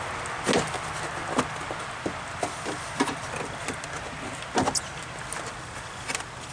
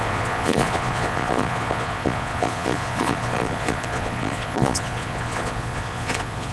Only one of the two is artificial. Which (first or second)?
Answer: second